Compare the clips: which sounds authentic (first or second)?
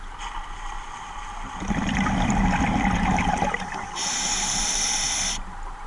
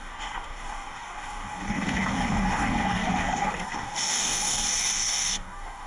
first